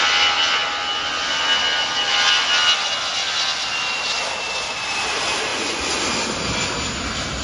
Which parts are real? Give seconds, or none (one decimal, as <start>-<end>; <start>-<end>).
0.0-5.5; 6.0-7.4